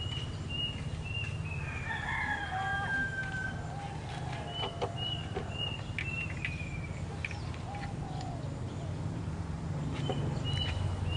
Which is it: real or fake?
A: real